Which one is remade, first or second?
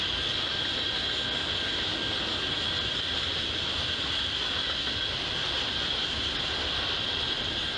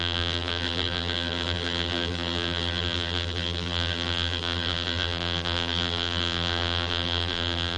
second